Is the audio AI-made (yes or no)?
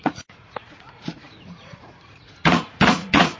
yes